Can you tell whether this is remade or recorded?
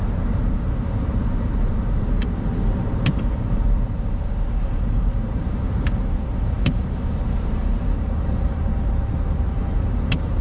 remade